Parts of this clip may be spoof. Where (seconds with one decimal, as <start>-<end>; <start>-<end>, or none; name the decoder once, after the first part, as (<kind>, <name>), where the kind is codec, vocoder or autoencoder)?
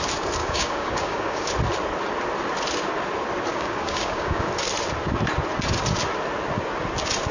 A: 0.4-1.5 (codec, DAC); 3.5-4.5